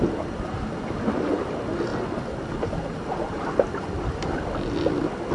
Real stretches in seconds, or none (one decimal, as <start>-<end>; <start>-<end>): 0.0-5.3